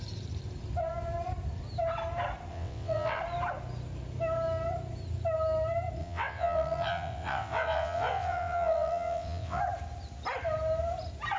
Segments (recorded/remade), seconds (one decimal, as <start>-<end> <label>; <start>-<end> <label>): 0.0-2.5 recorded; 2.5-3.2 remade; 3.2-6.0 recorded; 6.0-9.6 remade; 9.6-11.4 recorded